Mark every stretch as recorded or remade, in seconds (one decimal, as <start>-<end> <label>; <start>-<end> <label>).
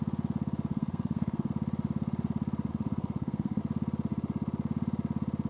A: 0.0-0.7 recorded; 0.7-1.5 remade; 1.5-2.7 recorded; 2.7-3.6 remade; 3.6-5.5 recorded